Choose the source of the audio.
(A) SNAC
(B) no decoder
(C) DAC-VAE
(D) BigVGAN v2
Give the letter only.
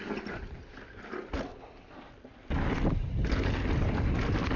B